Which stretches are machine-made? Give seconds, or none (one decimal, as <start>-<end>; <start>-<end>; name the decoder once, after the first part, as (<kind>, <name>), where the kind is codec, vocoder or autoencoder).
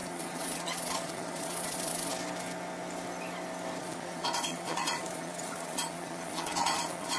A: 0.0-2.1 (vocoder, Vocos); 3.8-7.2